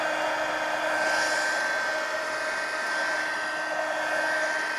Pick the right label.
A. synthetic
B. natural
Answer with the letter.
B